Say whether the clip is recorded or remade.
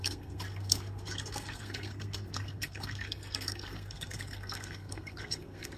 remade